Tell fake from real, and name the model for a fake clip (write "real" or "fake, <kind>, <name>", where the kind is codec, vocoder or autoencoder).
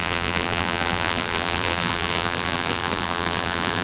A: fake, vocoder, BigVGAN v2